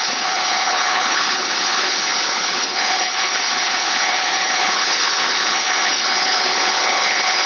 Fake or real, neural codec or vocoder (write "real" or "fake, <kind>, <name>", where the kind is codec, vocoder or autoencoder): fake, codec, HILCodec